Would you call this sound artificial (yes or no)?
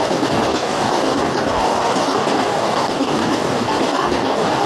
yes